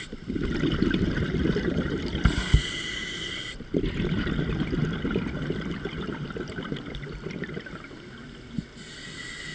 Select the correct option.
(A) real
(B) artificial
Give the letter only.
A